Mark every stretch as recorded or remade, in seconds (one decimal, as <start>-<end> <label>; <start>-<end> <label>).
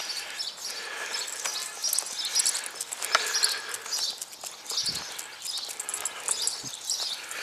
0.0-7.4 recorded